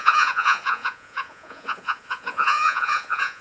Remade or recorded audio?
remade